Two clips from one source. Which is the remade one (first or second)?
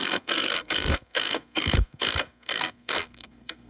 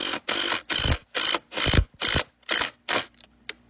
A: first